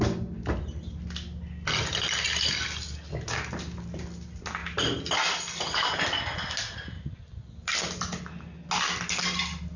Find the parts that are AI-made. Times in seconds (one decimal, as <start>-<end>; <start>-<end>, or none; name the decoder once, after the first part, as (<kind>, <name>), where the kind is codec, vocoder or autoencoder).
none